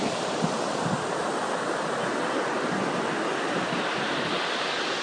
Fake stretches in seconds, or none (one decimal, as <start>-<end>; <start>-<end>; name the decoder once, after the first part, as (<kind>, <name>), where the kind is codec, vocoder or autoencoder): none